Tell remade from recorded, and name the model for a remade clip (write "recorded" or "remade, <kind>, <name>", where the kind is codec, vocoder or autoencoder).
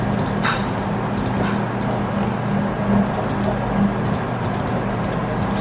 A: recorded